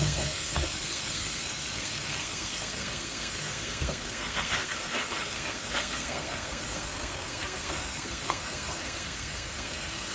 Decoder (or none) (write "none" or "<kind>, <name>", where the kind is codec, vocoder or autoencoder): codec, SNAC